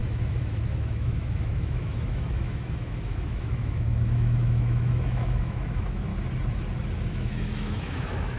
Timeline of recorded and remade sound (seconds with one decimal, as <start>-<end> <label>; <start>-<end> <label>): 0.0-6.1 remade; 6.1-7.0 recorded; 7.0-8.4 remade